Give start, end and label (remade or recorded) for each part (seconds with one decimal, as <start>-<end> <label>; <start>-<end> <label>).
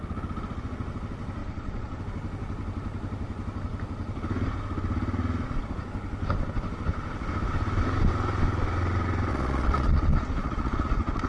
0.0-1.4 recorded; 1.4-2.0 remade; 2.0-9.3 recorded; 9.3-11.3 remade